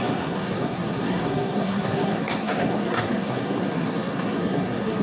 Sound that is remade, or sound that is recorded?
remade